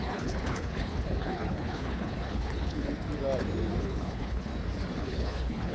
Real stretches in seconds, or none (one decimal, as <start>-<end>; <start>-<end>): 2.9-3.8; 4.5-5.0